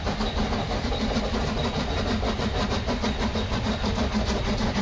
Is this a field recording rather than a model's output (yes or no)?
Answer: yes